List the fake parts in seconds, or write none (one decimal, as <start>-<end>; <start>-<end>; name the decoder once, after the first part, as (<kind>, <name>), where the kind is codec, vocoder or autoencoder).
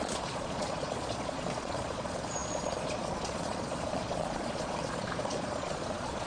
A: 0.0-6.3 (vocoder, Vocos)